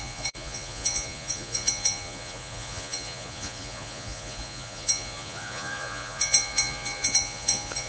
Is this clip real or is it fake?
fake